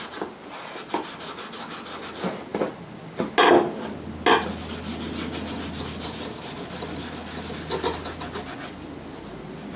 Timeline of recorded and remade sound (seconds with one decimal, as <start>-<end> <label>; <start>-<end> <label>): 0.0-9.8 recorded